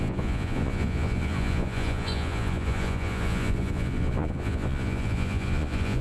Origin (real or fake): fake